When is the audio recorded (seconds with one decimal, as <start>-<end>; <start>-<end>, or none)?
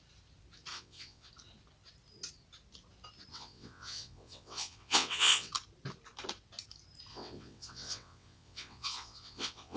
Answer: 0.0-0.7; 1.3-3.3; 5.5-7.1